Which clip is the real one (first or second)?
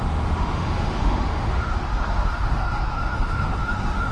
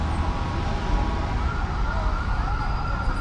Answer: second